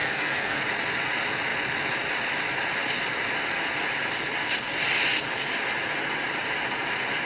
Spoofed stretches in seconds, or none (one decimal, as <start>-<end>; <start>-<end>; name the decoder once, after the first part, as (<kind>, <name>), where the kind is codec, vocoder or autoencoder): 0.0-0.6 (codec, SNAC)